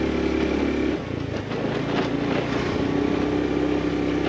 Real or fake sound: real